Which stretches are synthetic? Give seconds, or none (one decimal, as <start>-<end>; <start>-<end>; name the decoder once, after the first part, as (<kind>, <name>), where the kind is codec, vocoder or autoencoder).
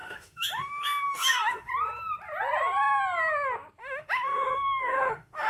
0.0-1.7 (autoencoder, DAC-VAE); 3.8-5.5